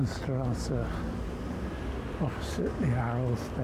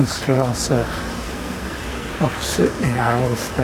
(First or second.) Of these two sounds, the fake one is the second